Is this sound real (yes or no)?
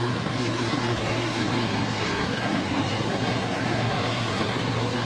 no